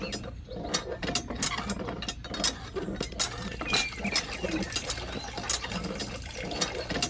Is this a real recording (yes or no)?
yes